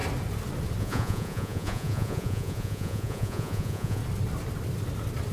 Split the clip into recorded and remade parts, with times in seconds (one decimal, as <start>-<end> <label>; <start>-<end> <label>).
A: 0.0-0.8 recorded; 0.8-4.0 remade; 4.0-5.3 recorded